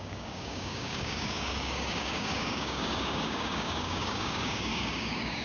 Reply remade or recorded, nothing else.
remade